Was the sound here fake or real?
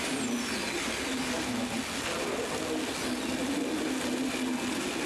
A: real